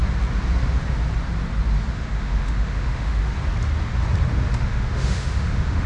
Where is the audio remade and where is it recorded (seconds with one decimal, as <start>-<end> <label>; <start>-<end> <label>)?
0.0-1.9 recorded; 1.9-3.2 remade; 3.2-4.5 recorded; 4.5-5.9 remade